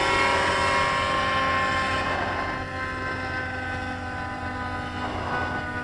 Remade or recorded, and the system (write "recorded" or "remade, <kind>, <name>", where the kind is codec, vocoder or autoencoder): recorded